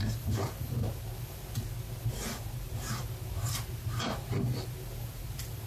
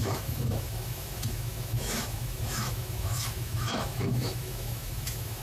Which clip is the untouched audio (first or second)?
first